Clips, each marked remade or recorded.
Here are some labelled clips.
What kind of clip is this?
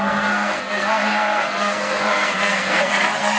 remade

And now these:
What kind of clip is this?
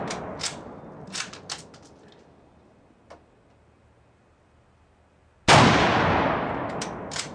recorded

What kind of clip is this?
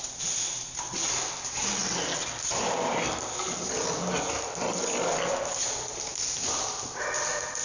recorded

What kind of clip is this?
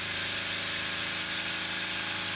recorded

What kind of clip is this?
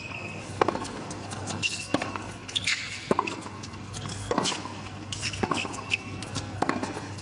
remade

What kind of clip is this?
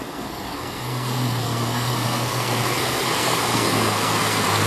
remade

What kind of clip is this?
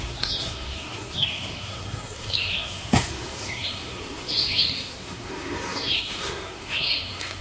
remade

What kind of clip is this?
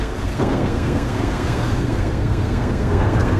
remade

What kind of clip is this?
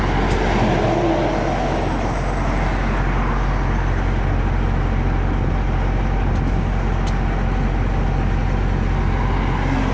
recorded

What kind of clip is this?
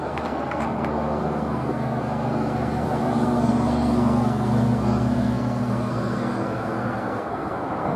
remade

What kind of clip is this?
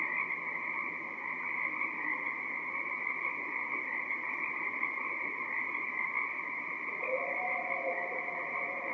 recorded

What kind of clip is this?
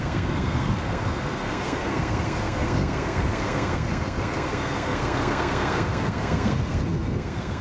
remade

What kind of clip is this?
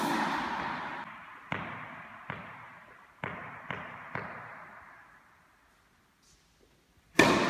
recorded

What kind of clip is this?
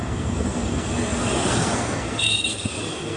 remade